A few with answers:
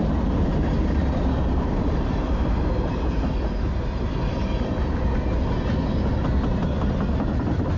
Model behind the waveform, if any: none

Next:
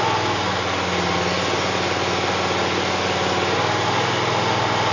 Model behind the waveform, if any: none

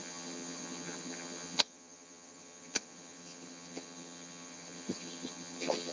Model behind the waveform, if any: vocoder, HiFi-GAN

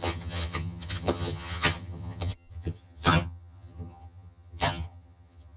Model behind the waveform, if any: vocoder, HiFi-GAN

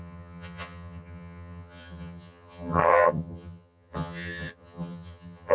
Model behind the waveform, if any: vocoder, HiFi-GAN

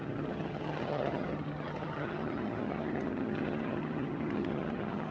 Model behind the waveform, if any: vocoder, HiFi-GAN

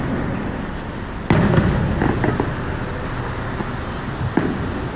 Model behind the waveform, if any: none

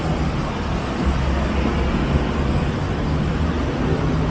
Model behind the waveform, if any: none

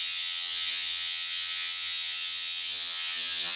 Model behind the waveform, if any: vocoder, HiFi-GAN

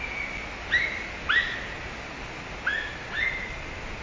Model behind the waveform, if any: none